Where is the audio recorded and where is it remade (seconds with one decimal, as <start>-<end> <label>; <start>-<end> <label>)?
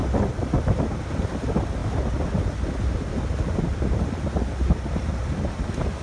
0.0-6.0 recorded